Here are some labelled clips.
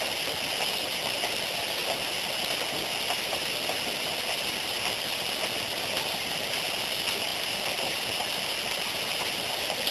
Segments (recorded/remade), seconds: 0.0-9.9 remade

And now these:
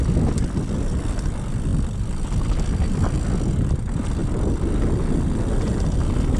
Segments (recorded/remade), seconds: 0.0-6.4 recorded

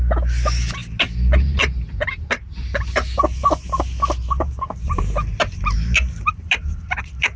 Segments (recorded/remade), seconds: 0.0-7.4 recorded

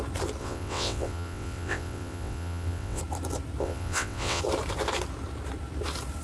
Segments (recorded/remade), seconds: 0.0-0.4 recorded; 0.4-3.0 remade; 3.0-3.6 recorded; 3.6-4.4 remade; 4.4-6.2 recorded

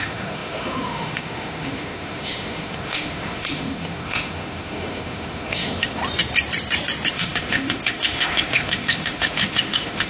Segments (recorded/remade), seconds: 0.0-6.0 remade; 6.0-7.1 recorded; 7.1-10.1 remade

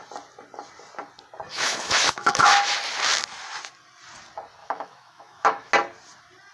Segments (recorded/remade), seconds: 0.0-1.5 recorded; 1.5-2.7 remade; 2.7-4.6 recorded; 4.6-5.7 remade; 5.7-6.5 recorded